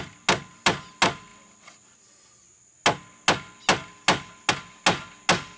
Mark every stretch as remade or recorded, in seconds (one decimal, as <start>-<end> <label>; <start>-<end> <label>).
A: 0.0-5.6 recorded